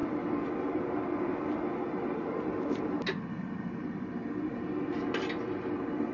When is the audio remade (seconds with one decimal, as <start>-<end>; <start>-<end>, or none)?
none